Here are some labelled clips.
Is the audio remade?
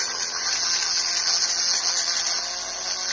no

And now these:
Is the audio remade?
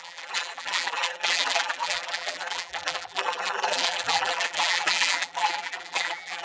yes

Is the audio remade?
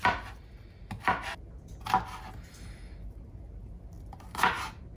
no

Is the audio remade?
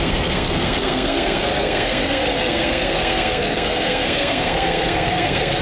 yes